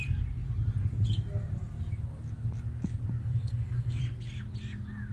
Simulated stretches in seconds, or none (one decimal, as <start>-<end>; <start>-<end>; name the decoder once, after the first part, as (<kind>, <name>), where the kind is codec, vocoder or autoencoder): 3.2-4.0 (codec, SNAC)